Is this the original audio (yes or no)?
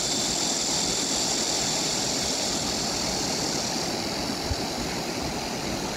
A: yes